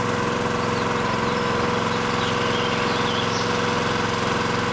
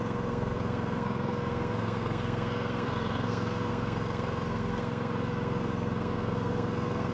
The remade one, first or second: second